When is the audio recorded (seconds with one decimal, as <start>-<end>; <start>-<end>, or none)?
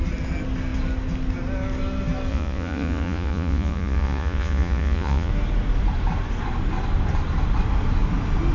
0.0-2.3; 5.3-8.5